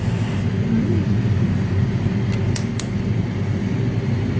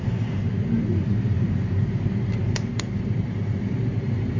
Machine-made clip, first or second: second